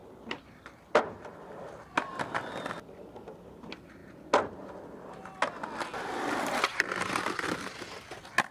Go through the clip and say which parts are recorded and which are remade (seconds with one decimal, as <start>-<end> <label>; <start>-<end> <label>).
0.0-1.3 remade; 1.3-8.5 recorded